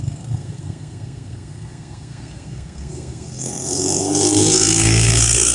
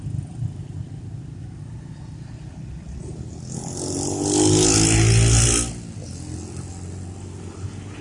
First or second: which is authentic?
second